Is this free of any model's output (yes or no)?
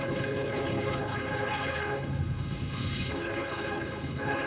no